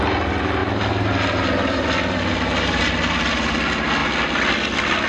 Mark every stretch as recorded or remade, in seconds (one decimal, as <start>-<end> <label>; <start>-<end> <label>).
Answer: 0.0-5.1 recorded